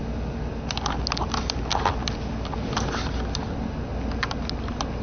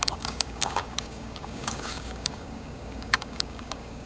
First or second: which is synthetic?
second